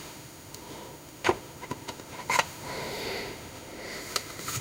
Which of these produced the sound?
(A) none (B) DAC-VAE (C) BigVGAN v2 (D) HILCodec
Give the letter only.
B